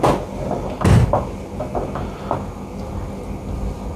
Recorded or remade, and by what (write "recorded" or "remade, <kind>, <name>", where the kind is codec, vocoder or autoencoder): recorded